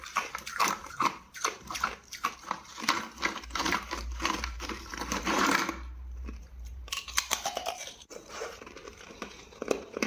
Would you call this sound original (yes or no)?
no